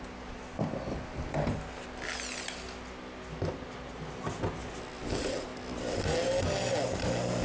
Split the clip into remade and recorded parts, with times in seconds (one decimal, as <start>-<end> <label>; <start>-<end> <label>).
0.0-7.4 recorded